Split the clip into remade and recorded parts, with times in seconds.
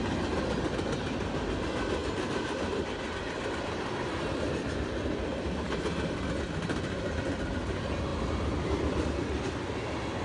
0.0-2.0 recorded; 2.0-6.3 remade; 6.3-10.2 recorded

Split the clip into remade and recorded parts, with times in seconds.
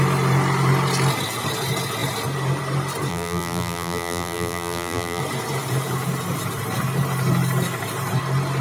0.0-3.1 recorded; 3.1-5.2 remade; 5.2-8.6 recorded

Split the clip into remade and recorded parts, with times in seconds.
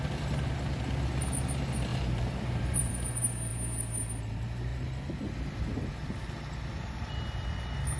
0.0-1.9 recorded; 1.9-2.9 remade; 2.9-8.0 recorded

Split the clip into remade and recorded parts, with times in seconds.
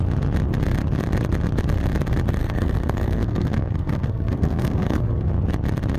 0.0-2.4 recorded; 2.4-5.3 remade; 5.3-6.0 recorded